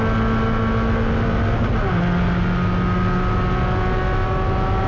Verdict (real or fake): real